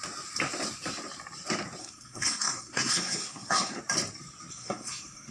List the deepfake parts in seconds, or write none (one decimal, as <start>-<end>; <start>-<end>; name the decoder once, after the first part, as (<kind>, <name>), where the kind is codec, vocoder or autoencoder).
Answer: 1.8-3.8 (codec, SNAC); 4.5-5.3